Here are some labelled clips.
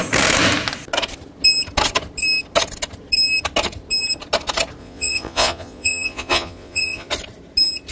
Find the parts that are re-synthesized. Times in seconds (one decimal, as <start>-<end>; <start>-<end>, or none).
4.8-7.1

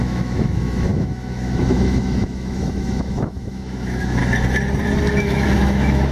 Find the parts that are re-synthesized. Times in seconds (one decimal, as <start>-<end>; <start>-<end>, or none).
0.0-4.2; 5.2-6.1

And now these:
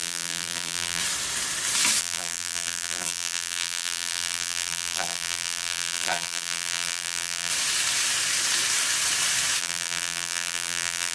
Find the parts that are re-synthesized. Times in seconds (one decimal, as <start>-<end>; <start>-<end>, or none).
0.0-1.0; 2.0-7.5; 9.6-11.1